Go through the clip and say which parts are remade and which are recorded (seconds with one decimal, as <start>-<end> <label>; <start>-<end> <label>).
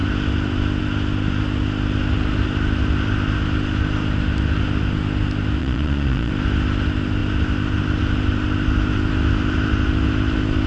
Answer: 0.0-5.6 recorded; 5.6-6.3 remade; 6.3-10.7 recorded